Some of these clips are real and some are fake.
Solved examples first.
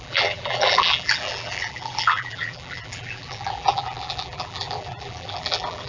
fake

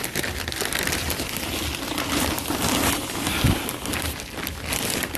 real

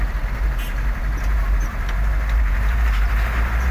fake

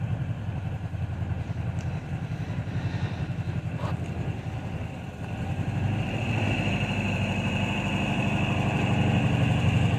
fake